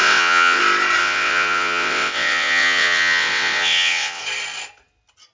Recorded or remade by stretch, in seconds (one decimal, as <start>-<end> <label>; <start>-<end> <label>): 0.0-0.6 remade; 0.6-1.0 recorded; 1.0-4.2 remade; 4.2-5.3 recorded